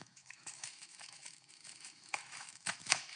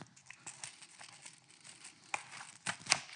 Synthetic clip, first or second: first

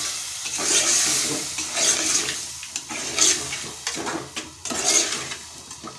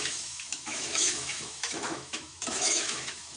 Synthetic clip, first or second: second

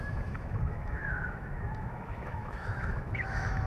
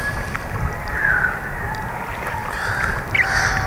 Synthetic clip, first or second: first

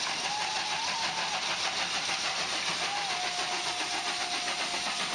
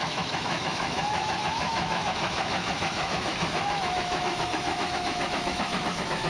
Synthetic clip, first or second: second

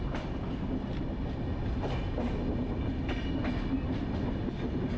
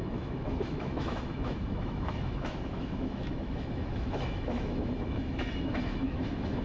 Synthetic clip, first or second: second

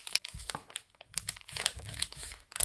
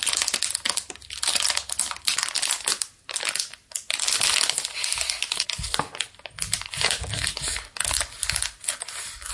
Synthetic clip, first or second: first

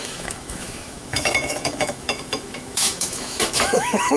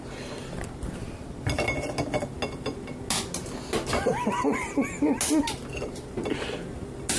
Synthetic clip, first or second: first